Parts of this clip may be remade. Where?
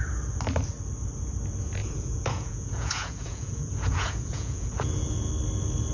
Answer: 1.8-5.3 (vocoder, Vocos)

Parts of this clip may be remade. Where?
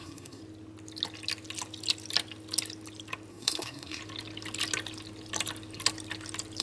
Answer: 0.0-0.4 (codec, SNAC); 3.3-4.0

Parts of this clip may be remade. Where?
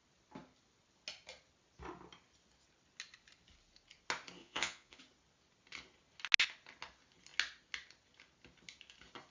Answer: 4.4-5.0 (vocoder, Vocos)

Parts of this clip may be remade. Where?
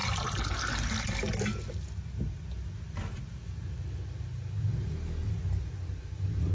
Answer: none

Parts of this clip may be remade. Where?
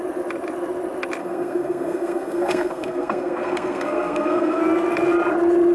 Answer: 1.2-4.6 (codec, SNAC)